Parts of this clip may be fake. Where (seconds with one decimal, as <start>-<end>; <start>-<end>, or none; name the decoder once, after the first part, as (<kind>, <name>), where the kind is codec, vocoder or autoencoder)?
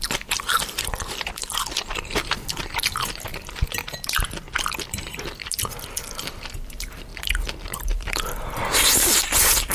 0.0-3.3 (vocoder, BigVGAN v2); 6.2-7.1; 7.9-9.7